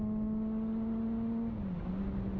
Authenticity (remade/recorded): recorded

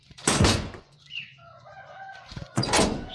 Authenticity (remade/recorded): remade